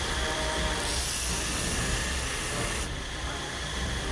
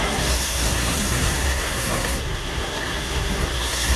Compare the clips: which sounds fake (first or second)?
second